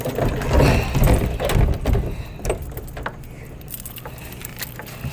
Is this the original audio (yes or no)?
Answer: yes